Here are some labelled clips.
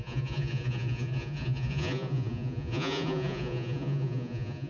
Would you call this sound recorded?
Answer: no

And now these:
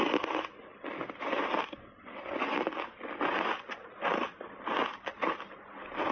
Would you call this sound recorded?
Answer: yes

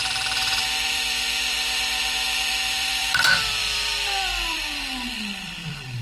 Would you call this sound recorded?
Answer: no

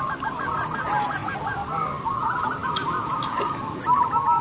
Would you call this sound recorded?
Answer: yes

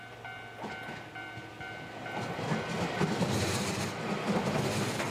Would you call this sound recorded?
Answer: yes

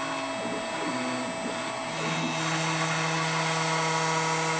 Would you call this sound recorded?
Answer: yes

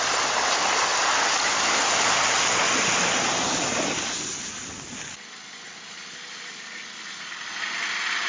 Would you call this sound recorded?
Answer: yes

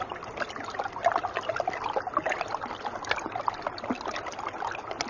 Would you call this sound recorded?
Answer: yes